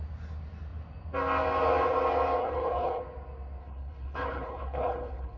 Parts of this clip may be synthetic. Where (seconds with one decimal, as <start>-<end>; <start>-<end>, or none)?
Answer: 2.4-3.0; 3.6-5.4